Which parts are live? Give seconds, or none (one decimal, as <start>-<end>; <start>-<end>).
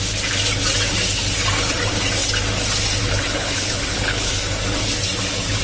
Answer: 0.0-3.0; 4.3-5.6